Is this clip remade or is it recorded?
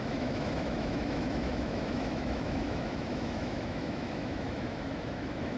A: remade